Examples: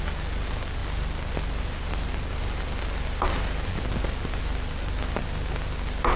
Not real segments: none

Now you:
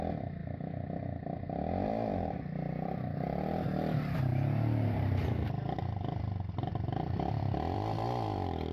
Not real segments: 0.0-0.4 (vocoder, BigVGAN v2); 1.9-4.3; 6.2-8.7